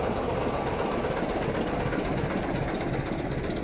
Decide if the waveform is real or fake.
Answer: real